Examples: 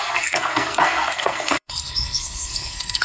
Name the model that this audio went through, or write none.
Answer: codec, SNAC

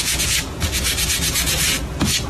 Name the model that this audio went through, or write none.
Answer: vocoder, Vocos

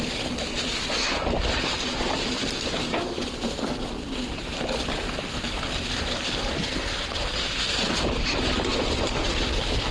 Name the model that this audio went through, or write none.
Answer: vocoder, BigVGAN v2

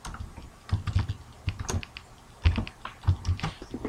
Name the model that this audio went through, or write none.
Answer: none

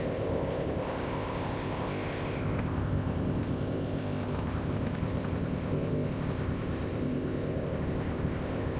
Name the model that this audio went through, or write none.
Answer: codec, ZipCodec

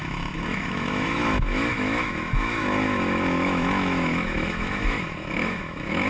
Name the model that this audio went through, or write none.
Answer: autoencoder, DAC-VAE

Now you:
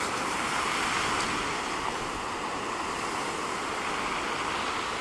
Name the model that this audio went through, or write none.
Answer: none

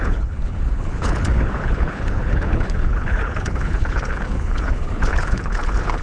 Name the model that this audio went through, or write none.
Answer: codec, HILCodec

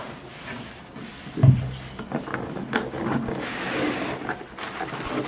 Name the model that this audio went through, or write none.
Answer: none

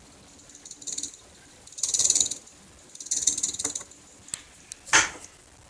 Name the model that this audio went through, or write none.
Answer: none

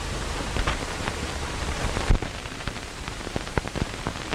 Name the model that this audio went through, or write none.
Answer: vocoder, BigVGAN v2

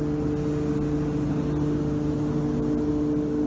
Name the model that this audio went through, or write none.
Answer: none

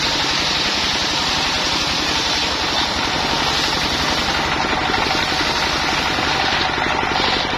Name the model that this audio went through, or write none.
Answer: none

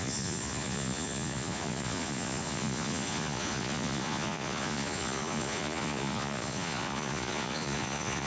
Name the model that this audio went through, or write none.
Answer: vocoder, Vocos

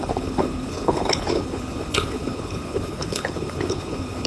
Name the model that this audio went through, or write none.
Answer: codec, HILCodec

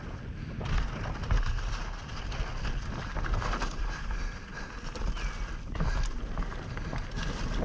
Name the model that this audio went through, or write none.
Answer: none